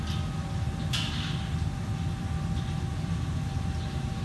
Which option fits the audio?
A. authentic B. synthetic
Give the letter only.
A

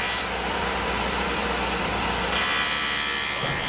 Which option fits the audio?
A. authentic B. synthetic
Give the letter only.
B